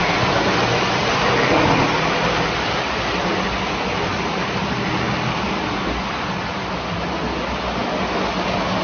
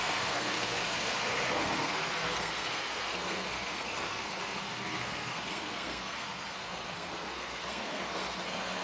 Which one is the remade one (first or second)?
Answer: second